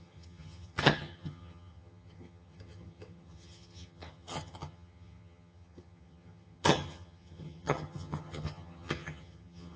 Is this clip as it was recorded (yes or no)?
no